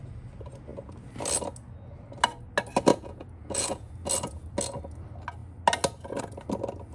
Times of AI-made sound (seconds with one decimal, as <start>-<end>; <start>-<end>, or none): 2.9-3.9